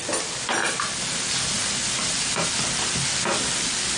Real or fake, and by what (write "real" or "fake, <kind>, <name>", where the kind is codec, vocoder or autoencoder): real